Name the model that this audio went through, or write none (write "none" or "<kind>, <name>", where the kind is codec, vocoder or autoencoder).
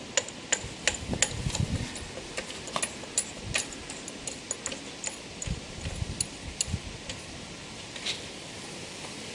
none